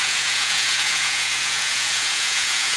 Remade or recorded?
remade